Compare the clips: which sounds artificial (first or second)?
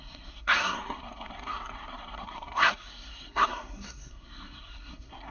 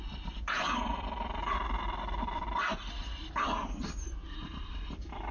first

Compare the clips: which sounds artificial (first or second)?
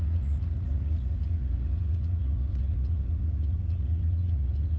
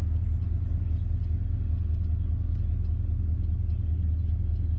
first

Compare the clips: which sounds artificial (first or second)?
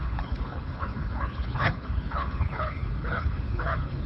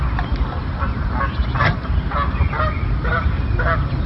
first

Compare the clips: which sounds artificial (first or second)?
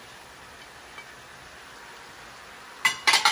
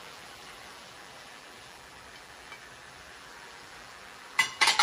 second